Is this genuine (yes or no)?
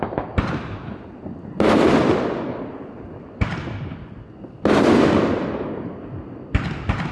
yes